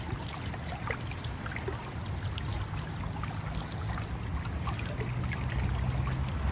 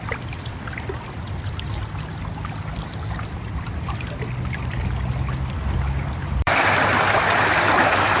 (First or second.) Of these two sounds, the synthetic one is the second